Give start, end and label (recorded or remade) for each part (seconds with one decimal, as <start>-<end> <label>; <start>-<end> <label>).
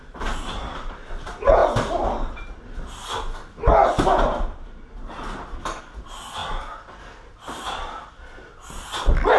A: 0.0-9.4 recorded